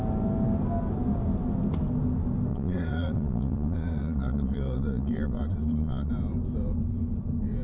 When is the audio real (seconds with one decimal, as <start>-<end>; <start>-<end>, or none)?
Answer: 0.0-2.5; 6.1-7.6